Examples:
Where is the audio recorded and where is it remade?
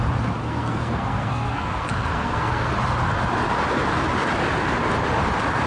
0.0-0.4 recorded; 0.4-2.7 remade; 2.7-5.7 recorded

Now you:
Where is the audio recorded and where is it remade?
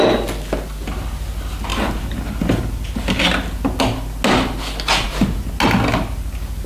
0.0-6.7 recorded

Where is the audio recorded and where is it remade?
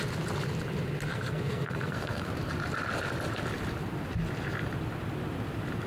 0.0-1.1 recorded; 1.1-2.3 remade; 2.3-5.9 recorded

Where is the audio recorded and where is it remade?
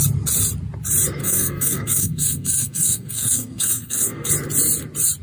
0.0-1.2 recorded; 1.2-4.3 remade; 4.3-5.2 recorded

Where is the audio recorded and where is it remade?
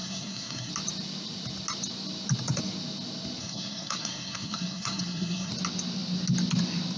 0.0-0.7 remade; 0.7-3.4 recorded; 3.4-5.5 remade; 5.5-7.0 recorded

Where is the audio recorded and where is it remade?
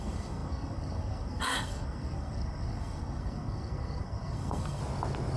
0.0-4.8 remade; 4.8-5.4 recorded